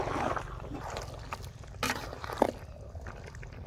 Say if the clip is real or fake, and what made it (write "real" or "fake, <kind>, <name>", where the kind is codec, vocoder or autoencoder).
real